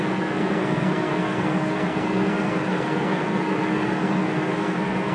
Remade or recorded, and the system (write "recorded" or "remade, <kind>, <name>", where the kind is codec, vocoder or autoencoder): remade, codec, SNAC